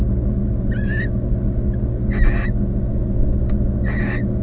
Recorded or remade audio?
recorded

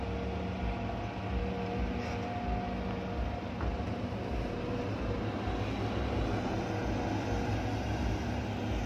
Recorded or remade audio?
recorded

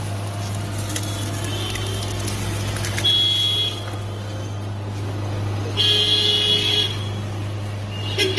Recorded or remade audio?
recorded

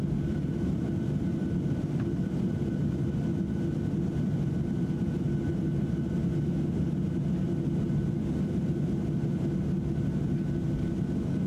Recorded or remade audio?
recorded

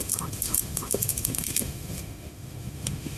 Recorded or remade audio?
remade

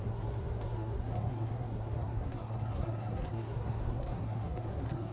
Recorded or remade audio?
remade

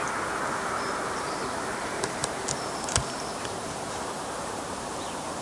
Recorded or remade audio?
remade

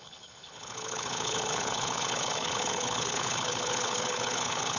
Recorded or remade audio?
remade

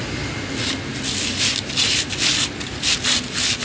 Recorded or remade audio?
recorded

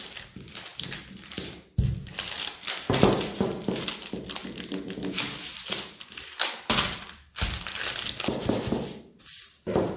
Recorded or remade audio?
recorded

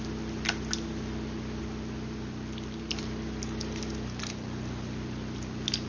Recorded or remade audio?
recorded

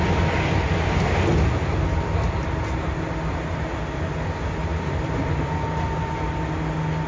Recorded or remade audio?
recorded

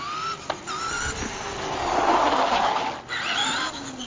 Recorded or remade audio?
recorded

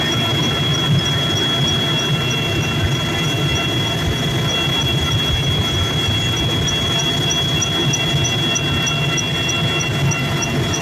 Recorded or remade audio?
recorded